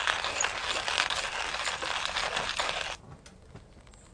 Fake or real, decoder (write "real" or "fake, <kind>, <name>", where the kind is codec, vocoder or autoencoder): real